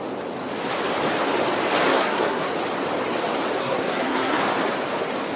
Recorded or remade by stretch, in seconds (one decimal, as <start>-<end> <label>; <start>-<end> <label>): 0.0-1.9 recorded; 1.9-2.5 remade; 2.5-3.6 recorded; 3.6-4.4 remade; 4.4-5.4 recorded